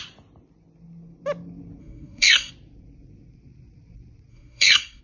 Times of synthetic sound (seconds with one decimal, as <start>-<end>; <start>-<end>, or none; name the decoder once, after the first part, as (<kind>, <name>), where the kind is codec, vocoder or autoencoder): 1.8-2.5 (codec, SNAC); 4.3-5.0

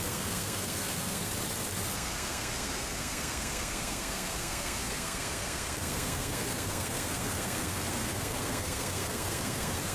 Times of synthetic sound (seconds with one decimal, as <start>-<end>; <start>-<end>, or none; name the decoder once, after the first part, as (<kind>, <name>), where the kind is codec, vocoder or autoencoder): 0.0-1.3 (codec, SNAC); 1.9-9.9

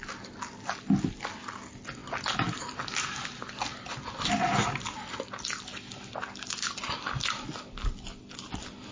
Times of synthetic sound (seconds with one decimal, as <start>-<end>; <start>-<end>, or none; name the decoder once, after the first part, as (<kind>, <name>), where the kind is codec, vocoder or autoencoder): none